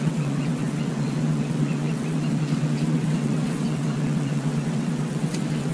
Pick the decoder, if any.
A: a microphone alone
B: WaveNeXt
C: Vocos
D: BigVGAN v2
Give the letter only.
B